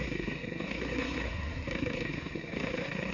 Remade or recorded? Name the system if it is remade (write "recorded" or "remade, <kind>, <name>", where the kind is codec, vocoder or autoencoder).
remade, codec, SNAC